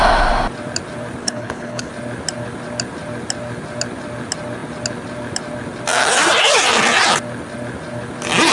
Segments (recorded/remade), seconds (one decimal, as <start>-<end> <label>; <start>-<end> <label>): 0.0-1.2 recorded; 1.2-1.9 remade; 1.9-8.5 recorded